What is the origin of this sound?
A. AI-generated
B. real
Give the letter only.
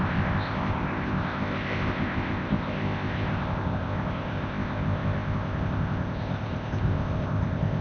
A